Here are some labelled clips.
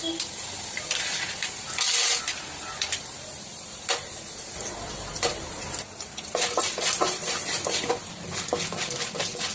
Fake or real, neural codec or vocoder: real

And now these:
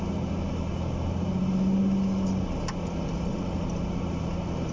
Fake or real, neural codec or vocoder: real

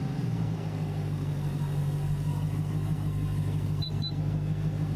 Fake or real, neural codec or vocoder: fake, codec, SNAC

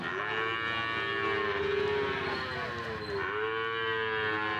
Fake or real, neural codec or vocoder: real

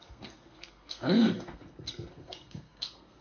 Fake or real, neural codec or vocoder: fake, codec, SNAC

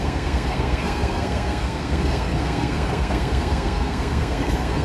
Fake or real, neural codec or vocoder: fake, codec, SNAC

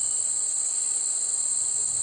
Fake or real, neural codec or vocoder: real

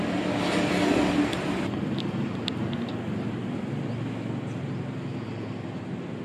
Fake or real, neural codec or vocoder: real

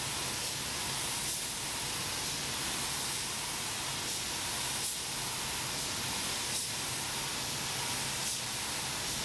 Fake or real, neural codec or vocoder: real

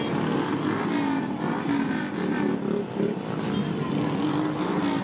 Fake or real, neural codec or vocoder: real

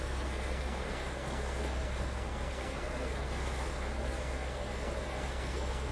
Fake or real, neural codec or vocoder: fake, codec, SNAC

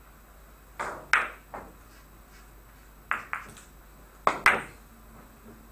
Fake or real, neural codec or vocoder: real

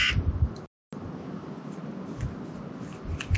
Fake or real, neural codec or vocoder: real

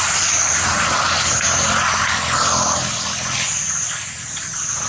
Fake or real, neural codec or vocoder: real